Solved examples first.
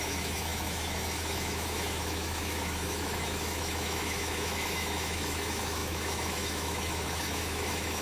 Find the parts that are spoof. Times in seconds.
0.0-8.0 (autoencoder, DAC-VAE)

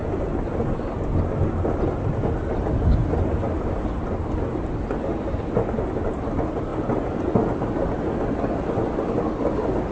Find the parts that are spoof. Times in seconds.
none

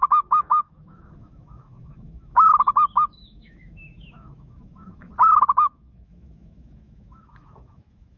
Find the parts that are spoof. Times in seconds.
0.0-5.1 (autoencoder, DAC-VAE); 5.7-8.2

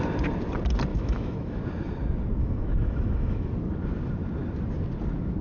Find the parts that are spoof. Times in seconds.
0.9-1.6 (autoencoder, DAC-VAE); 2.4-3.5

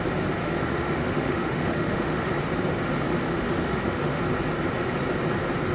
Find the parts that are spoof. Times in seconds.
0.4-2.3 (autoencoder, DAC-VAE); 3.1-4.2